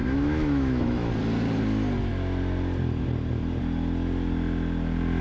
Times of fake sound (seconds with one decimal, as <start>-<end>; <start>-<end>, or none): 0.0-1.1

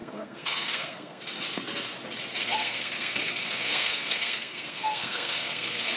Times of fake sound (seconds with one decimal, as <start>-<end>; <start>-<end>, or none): 0.0-1.2; 2.4-6.0

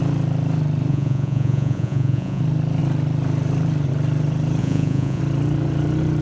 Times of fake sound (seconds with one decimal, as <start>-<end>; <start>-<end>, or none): 0.9-2.4; 4.6-5.2

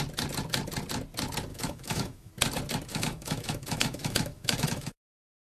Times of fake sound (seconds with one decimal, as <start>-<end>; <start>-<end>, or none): 1.5-2.3; 2.9-5.1

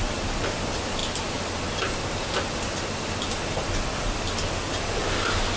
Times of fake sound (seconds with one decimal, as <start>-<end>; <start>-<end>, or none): none

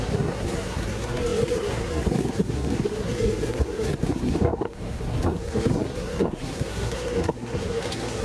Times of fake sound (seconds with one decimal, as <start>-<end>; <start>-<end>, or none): 0.0-8.2